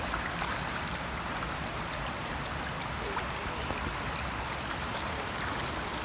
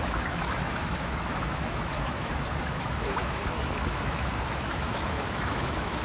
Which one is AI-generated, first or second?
second